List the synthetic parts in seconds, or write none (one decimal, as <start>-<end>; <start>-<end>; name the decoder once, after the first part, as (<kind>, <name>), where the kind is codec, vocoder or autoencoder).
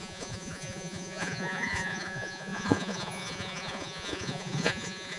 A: 0.0-5.2 (vocoder, Vocos)